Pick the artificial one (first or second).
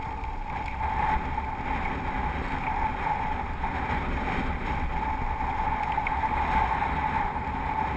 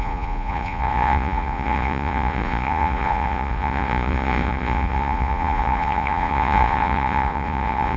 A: second